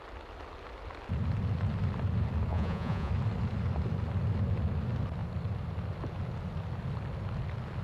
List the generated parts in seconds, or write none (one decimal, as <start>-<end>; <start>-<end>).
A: 2.5-3.1